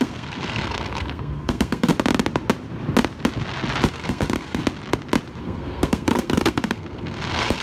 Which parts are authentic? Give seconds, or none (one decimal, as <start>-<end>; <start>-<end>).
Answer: 1.9-3.9; 4.6-5.4